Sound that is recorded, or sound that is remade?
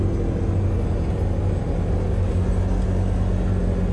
recorded